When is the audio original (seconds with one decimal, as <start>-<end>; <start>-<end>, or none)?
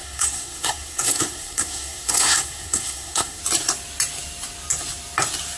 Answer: 3.4-5.6